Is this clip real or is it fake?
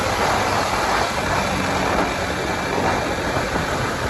real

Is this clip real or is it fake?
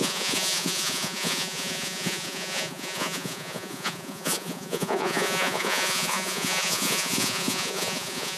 fake